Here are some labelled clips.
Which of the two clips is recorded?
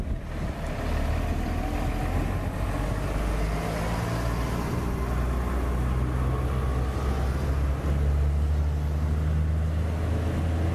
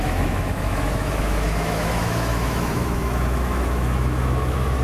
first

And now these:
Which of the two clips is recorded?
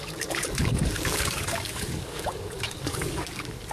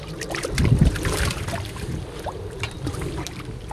second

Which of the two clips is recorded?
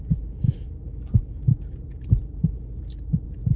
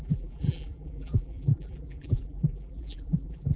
first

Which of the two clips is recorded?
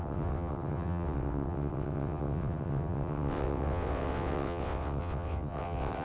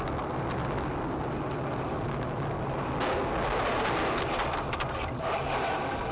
second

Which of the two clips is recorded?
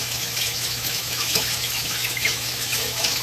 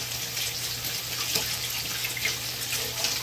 second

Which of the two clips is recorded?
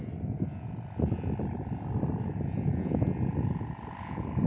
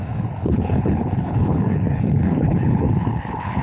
first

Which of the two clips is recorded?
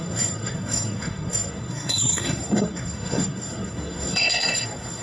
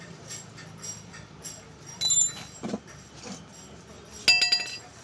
second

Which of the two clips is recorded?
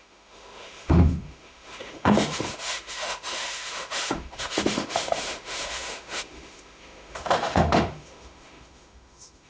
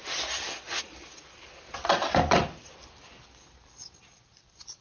second